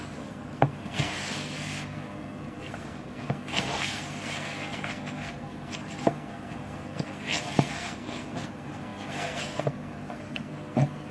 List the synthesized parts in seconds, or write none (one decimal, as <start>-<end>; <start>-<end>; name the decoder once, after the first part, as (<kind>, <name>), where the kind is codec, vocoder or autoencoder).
0.0-11.1 (codec, SNAC)